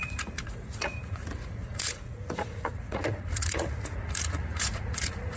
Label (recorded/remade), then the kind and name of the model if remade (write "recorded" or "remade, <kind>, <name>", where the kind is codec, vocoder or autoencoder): remade, vocoder, Vocos